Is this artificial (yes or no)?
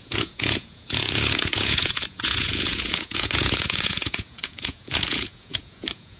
yes